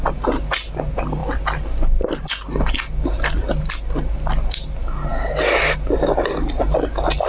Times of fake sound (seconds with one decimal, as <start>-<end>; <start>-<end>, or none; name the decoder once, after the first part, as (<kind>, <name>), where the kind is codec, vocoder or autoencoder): none

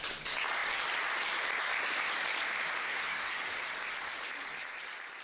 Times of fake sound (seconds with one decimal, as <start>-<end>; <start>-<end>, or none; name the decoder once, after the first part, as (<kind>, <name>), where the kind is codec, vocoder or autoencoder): 2.8-3.4 (codec, SNAC)

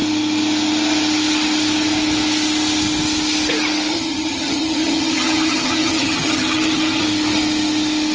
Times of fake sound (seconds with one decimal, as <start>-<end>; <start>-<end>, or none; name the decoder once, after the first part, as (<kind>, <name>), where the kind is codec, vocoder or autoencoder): 3.9-7.0 (vocoder, HiFi-GAN)

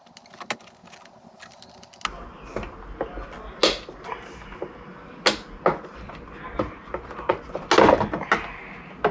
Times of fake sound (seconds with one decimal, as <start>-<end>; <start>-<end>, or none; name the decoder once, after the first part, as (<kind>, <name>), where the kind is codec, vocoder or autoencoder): none